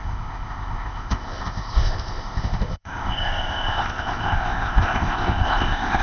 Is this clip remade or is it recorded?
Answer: remade